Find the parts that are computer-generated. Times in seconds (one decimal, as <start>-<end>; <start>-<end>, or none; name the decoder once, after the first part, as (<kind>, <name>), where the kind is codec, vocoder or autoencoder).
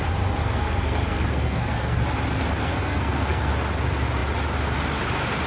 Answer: 0.4-2.0 (codec, SNAC); 2.6-3.5